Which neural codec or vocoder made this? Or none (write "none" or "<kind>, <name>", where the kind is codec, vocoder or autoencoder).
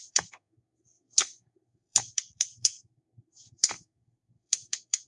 codec, SNAC